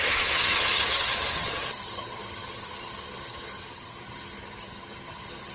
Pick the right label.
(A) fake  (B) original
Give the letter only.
A